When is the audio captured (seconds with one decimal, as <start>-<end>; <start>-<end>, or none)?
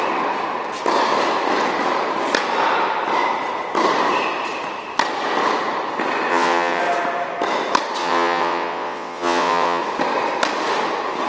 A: 0.0-6.3; 6.8-8.0; 9.8-11.3